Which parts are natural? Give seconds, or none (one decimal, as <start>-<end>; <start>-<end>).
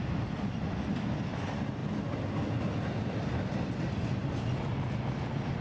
0.0-5.6